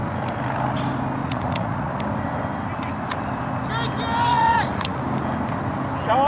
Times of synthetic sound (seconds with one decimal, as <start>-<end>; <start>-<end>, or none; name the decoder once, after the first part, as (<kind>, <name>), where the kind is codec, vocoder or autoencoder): 1.2-2.0 (vocoder, Vocos); 4.3-5.0